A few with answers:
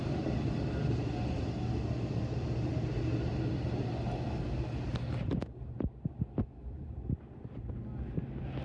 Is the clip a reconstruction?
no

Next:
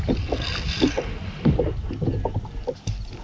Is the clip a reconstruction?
no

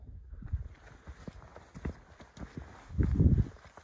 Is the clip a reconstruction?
no